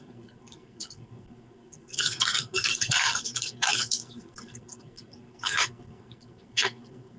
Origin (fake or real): fake